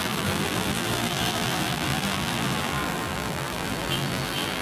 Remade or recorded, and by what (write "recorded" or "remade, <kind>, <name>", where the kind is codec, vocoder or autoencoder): remade, vocoder, BigVGAN v2